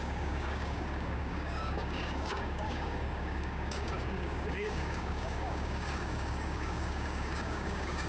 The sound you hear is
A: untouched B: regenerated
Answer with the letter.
B